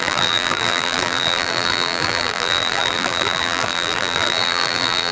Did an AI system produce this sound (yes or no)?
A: yes